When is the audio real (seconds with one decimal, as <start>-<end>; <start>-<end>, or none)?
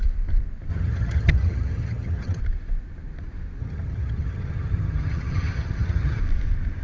0.0-0.7; 2.4-3.6; 6.2-6.8